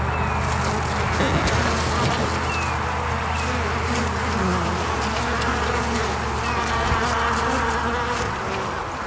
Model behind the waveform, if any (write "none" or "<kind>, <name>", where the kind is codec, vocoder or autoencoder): none